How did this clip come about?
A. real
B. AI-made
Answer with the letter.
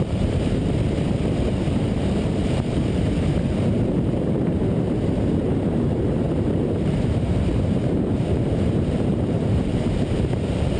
B